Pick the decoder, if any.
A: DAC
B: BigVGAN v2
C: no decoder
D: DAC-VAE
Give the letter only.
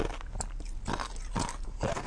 B